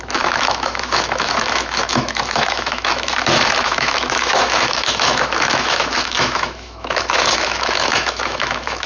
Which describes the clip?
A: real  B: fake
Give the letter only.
B